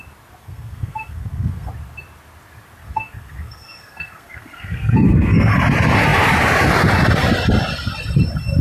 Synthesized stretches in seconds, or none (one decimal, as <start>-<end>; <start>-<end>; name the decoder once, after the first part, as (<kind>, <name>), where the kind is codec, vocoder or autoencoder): 0.4-1.7 (codec, SNAC); 2.8-5.5